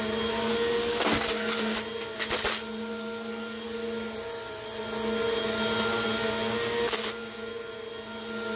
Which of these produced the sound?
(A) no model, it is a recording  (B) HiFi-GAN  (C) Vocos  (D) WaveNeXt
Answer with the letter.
A